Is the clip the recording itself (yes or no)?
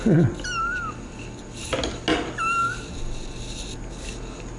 yes